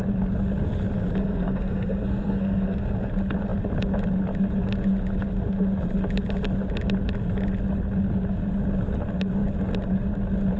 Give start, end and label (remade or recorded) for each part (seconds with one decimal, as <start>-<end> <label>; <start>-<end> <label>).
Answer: 0.0-1.2 recorded; 1.2-3.1 remade; 3.1-10.6 recorded